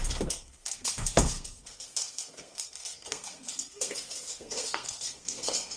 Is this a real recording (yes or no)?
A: no